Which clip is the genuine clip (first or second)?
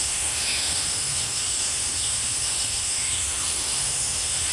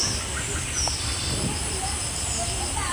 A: second